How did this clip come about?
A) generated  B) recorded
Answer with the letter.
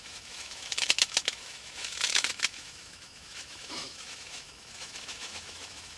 A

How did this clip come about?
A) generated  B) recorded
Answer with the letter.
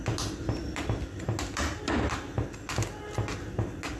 B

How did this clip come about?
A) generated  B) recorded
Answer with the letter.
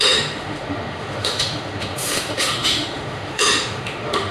A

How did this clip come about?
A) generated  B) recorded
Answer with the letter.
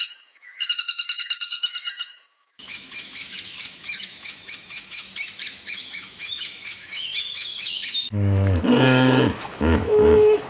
A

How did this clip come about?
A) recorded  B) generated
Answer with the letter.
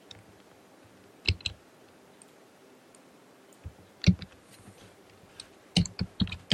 A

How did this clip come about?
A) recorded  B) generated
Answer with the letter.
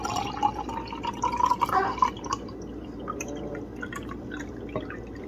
A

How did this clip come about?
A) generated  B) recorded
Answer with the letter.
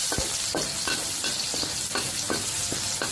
B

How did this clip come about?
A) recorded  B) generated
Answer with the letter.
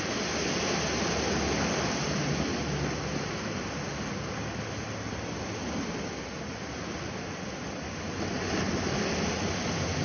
A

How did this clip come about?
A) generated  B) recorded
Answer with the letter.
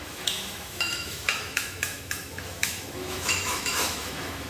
A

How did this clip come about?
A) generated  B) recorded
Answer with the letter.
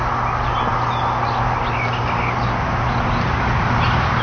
B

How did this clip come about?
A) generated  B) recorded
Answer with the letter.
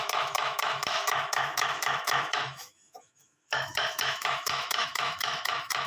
A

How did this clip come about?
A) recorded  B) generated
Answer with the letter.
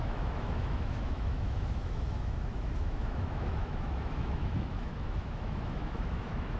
B